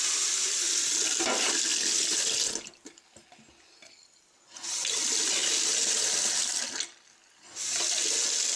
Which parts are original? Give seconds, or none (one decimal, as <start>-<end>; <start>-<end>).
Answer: 0.0-8.6